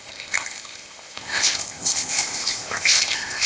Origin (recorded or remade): remade